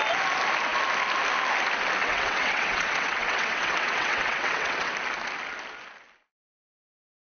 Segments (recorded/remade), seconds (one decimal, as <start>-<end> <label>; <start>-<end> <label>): 0.0-2.0 recorded; 2.0-4.9 remade; 4.9-7.2 recorded